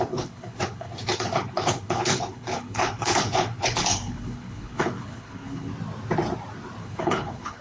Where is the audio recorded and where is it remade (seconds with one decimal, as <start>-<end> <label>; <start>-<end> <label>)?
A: 0.0-5.7 remade; 5.7-6.8 recorded; 6.8-7.6 remade